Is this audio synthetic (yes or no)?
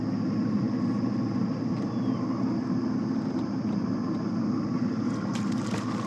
no